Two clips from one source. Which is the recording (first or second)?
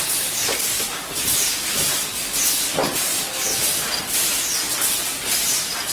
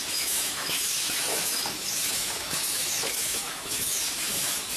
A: first